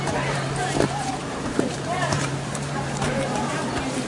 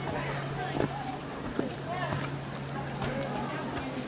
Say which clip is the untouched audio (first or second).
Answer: second